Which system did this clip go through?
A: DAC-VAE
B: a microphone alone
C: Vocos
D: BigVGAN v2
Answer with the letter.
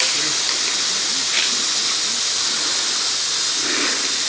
B